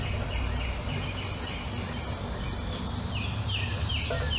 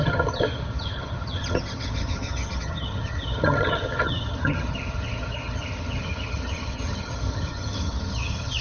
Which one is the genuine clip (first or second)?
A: first